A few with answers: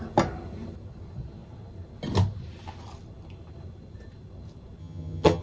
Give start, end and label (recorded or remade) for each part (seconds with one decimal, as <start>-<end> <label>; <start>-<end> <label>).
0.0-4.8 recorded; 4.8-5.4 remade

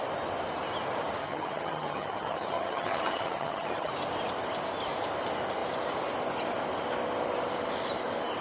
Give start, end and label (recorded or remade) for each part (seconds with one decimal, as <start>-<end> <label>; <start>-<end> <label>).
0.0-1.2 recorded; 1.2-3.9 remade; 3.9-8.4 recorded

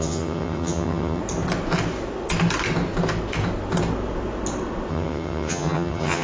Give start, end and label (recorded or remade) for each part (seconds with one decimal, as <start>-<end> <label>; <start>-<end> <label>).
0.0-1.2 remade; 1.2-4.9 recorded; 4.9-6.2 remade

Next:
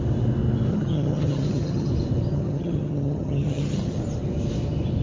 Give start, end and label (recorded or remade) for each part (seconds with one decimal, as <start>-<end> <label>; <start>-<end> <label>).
0.0-0.7 recorded; 0.7-1.9 remade; 1.9-2.3 recorded; 2.3-4.0 remade; 4.0-5.0 recorded

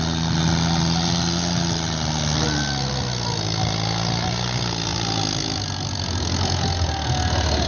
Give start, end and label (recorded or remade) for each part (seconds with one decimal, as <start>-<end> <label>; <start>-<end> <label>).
0.0-7.7 recorded